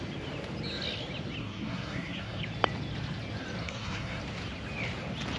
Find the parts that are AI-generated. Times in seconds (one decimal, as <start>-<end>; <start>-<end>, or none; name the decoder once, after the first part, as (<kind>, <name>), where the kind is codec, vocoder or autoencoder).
1.4-2.4 (codec, SNAC); 3.6-4.2